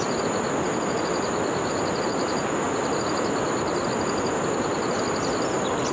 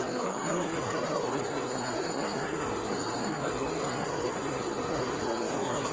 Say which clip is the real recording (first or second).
first